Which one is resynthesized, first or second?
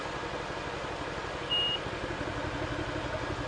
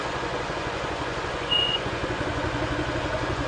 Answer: second